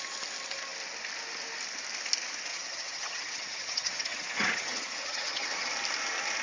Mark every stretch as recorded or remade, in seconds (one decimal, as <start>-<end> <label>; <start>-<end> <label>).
0.0-2.5 recorded; 2.5-5.7 remade; 5.7-6.4 recorded